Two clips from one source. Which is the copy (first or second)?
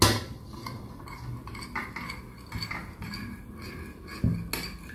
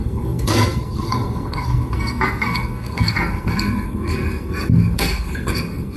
second